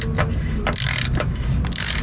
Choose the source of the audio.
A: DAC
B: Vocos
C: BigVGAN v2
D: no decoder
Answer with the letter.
D